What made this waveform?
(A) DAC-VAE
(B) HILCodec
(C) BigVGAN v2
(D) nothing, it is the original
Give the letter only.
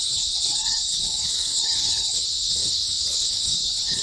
B